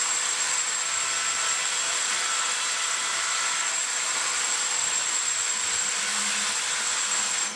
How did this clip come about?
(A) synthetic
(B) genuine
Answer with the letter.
B